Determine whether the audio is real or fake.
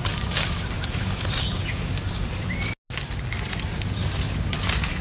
real